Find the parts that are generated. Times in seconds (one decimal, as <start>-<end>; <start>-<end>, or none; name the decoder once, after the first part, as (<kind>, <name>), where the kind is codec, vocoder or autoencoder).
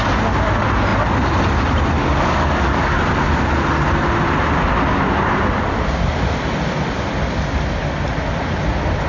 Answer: 2.0-3.0 (codec, DAC)